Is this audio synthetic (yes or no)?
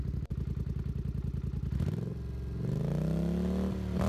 no